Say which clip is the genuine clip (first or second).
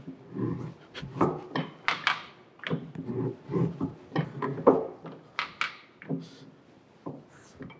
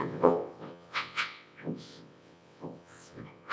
first